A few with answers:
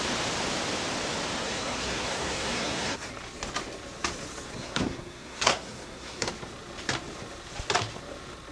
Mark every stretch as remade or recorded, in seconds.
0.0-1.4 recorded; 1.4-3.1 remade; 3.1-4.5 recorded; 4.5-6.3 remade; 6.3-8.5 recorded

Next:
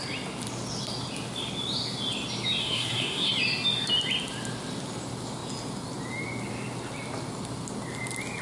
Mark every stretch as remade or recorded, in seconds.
0.0-2.6 recorded; 2.6-3.3 remade; 3.3-8.4 recorded